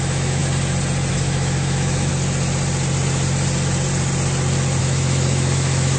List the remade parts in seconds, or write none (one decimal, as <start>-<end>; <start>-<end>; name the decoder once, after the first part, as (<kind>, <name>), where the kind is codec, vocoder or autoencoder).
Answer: 0.0-0.4 (autoencoder, DAC-VAE); 1.1-2.1; 4.8-6.0